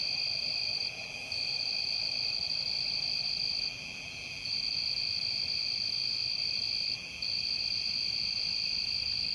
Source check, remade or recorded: remade